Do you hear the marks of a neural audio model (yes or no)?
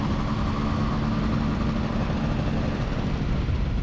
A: no